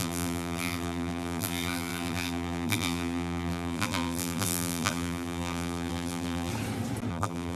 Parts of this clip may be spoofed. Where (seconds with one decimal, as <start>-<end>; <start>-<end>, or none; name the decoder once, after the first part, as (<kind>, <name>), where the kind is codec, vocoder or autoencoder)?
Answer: 0.0-6.5 (vocoder, BigVGAN v2); 7.1-7.6